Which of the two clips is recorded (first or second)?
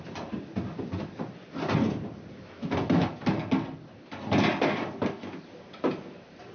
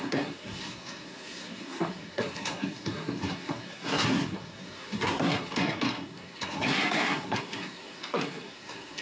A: first